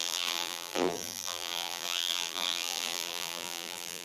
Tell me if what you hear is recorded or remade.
remade